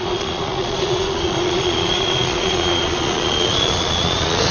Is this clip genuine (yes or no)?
no